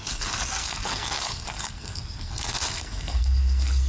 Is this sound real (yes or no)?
no